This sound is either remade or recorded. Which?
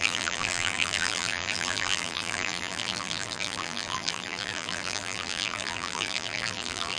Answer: remade